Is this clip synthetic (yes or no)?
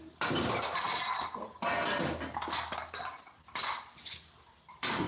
no